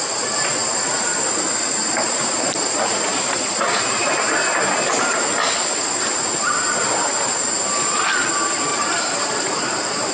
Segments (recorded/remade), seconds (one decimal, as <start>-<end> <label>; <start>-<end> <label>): 0.0-8.7 recorded; 8.7-10.1 remade

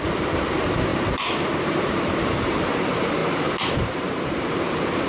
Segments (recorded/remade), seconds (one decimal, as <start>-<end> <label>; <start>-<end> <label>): 0.0-0.9 remade; 0.9-1.7 recorded; 1.7-3.2 remade; 3.2-3.7 recorded; 3.7-5.1 remade

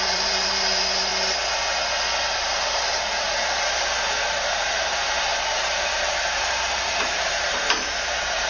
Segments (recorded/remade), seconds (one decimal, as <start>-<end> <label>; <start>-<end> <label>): 0.0-1.1 remade; 1.1-2.3 recorded; 2.3-8.5 remade

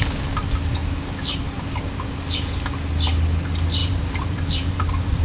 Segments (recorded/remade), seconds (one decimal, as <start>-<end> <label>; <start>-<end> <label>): 0.0-0.8 recorded; 0.8-1.4 remade; 1.4-3.8 recorded; 3.8-5.2 remade

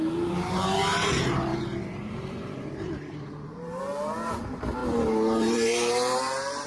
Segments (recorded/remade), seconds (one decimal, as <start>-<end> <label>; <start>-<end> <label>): 0.0-4.8 remade; 4.8-5.4 recorded; 5.4-6.7 remade

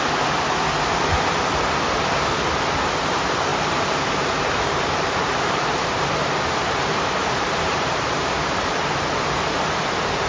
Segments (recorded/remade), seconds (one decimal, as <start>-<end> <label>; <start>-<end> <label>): 0.0-3.5 recorded; 3.5-8.7 remade; 8.7-10.3 recorded

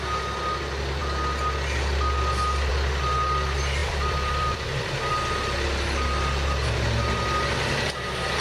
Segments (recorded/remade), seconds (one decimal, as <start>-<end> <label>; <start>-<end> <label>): 0.0-3.8 recorded; 3.8-5.1 remade; 5.1-8.4 recorded

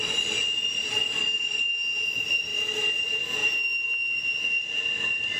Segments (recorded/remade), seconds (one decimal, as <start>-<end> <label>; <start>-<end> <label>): 0.0-1.0 recorded; 1.0-1.6 remade; 1.6-5.4 recorded